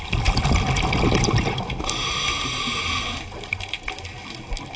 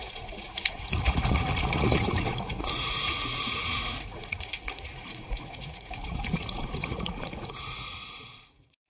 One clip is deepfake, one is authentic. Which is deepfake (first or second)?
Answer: second